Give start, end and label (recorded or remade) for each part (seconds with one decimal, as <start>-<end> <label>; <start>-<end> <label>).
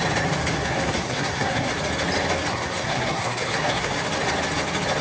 0.0-0.5 recorded; 0.5-1.7 remade; 1.7-2.5 recorded; 2.5-3.9 remade; 3.9-5.0 recorded